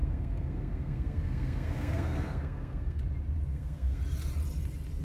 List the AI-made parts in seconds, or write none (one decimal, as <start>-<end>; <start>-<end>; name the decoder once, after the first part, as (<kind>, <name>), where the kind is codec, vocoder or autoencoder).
0.0-3.0 (codec, SNAC); 3.5-4.0